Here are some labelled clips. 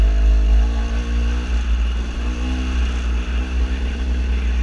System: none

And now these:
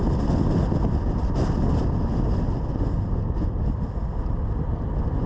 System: none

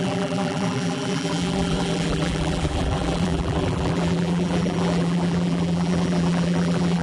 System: vocoder, BigVGAN v2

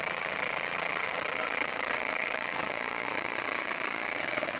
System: vocoder, WaveNeXt